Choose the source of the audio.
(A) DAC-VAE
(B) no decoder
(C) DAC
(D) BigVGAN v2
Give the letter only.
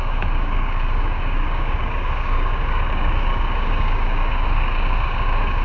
C